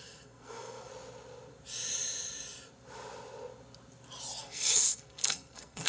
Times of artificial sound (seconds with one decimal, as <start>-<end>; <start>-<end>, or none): 0.0-0.9; 4.4-5.9